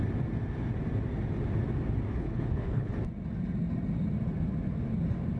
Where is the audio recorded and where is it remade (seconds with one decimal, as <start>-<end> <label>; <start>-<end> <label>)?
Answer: 0.0-2.1 recorded; 2.1-2.9 remade; 2.9-5.4 recorded